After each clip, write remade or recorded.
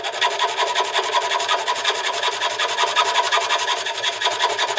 recorded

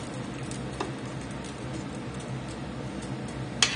recorded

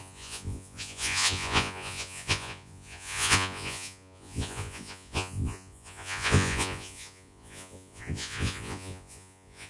remade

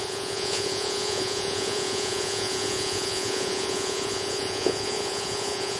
remade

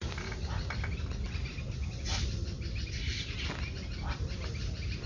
recorded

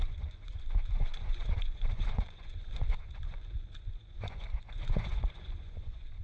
remade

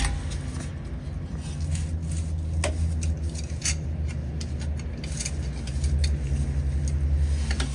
recorded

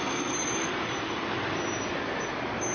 recorded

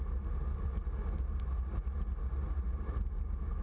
recorded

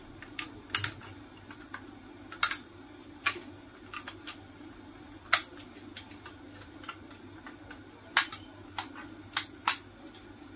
recorded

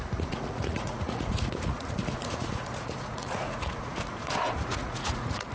remade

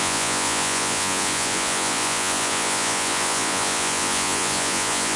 remade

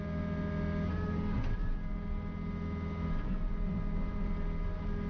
recorded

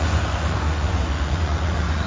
remade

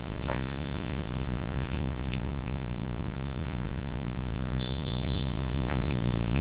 remade